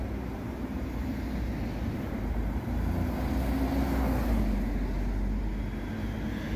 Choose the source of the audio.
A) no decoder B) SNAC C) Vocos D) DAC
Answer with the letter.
A